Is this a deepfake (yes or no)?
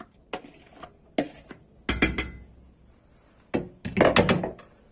no